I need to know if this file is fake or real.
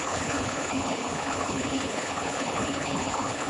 fake